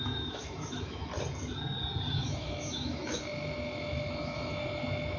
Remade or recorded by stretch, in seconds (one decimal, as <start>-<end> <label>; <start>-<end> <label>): 0.0-1.1 remade; 1.1-2.1 recorded; 2.1-5.2 remade